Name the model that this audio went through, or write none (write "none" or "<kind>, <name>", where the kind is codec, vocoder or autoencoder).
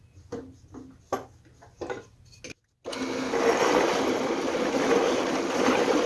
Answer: none